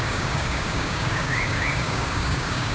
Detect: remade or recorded remade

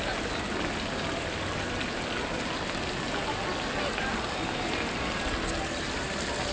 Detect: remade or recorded recorded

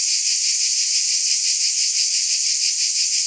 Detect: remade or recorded remade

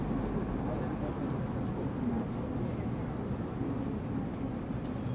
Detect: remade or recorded recorded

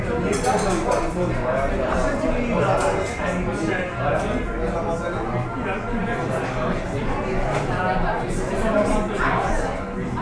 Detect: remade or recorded recorded